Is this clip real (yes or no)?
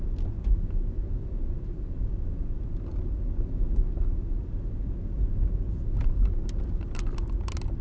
yes